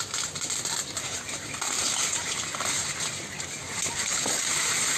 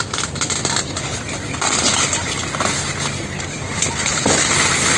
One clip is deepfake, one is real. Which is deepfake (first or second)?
first